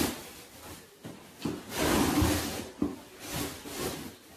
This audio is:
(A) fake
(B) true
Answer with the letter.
B